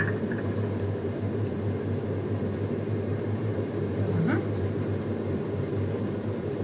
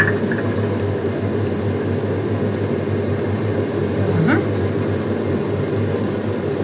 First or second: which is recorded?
second